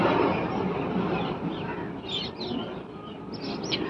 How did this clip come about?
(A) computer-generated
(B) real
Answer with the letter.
B